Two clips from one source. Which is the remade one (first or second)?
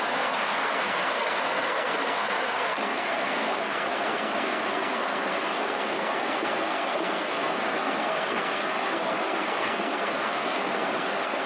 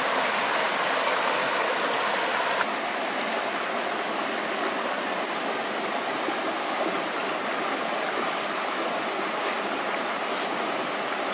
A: first